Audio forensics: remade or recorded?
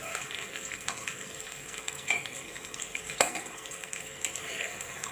remade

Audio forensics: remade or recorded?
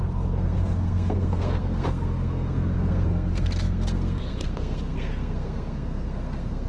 remade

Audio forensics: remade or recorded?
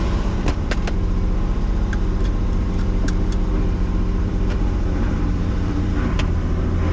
remade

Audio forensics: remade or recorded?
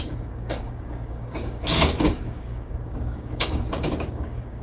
remade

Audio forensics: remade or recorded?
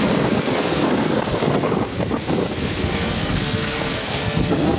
remade